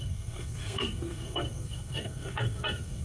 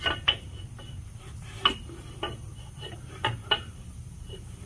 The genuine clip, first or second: second